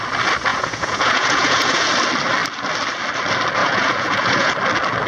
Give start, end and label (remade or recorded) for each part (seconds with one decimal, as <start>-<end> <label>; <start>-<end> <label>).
0.0-0.5 recorded; 0.5-1.9 remade; 1.9-3.6 recorded; 3.6-4.5 remade; 4.5-5.1 recorded